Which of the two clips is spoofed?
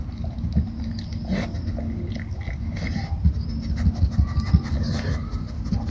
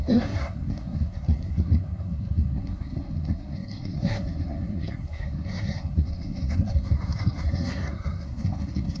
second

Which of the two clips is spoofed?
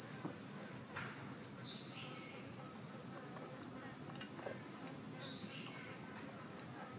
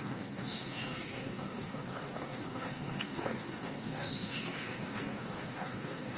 second